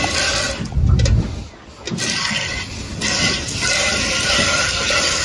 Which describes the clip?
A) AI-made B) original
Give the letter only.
B